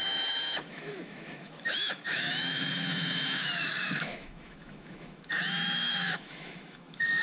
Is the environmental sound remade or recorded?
remade